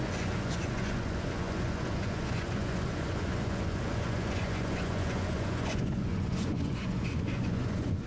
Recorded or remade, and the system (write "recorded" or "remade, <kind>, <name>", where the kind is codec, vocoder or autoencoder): remade, vocoder, Vocos